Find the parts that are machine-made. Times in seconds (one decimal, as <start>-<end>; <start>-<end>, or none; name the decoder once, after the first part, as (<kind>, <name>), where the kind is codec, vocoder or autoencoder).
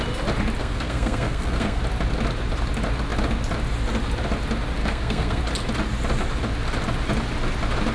0.6-1.8 (codec, SNAC); 4.8-5.4